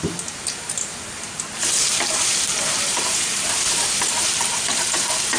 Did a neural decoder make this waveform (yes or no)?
yes